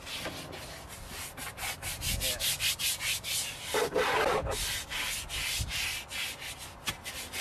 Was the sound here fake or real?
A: real